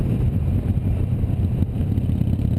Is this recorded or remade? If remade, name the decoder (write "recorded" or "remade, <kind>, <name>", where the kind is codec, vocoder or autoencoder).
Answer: remade, vocoder, BigVGAN v2